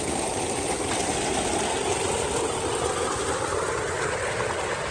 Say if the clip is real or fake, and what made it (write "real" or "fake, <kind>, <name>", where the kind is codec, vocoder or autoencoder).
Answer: real